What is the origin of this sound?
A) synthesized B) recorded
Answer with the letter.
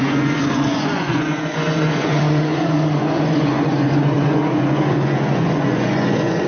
A